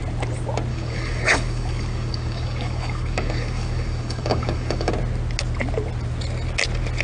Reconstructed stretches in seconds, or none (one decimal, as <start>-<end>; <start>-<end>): 0.7-4.9